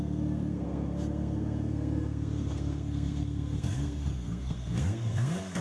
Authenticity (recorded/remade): remade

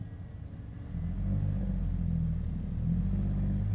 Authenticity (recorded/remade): recorded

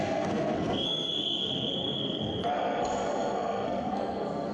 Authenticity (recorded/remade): remade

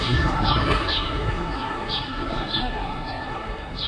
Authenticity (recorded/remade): remade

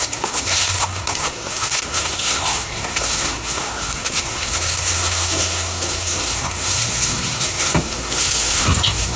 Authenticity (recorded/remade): remade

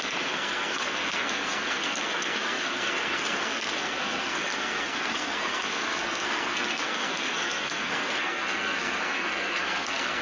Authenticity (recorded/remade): remade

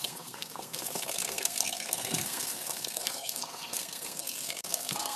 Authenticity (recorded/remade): remade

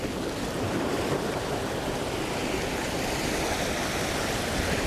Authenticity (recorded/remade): recorded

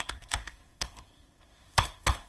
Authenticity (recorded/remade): remade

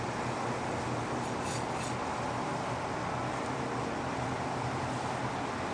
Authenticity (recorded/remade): recorded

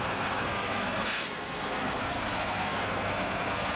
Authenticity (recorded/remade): remade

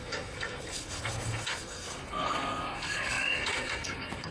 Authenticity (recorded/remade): remade